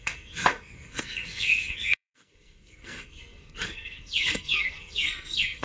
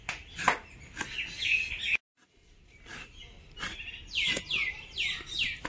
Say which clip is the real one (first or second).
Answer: second